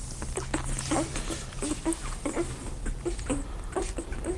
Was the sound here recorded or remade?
recorded